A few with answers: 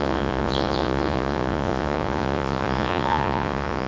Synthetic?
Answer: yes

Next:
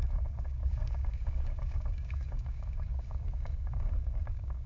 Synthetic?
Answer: yes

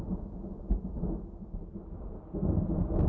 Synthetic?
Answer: no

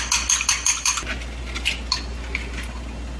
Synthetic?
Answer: no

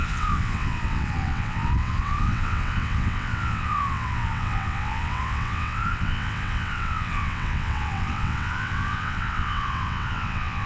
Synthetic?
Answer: yes